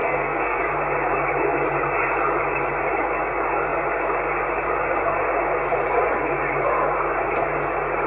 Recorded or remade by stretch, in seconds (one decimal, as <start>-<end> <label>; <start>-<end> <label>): 0.0-0.6 remade; 0.6-8.1 recorded